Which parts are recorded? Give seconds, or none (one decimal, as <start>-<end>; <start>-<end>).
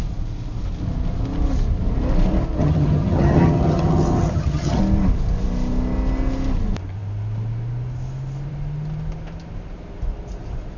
0.0-2.6; 4.8-10.8